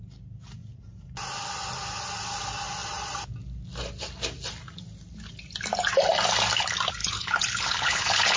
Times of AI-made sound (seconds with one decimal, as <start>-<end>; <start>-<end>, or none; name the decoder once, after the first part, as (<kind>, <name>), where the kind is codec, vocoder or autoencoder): 7.0-8.4 (codec, HILCodec)